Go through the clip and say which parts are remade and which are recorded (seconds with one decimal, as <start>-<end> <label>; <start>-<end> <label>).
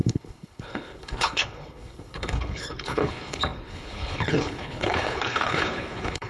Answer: 0.0-6.3 remade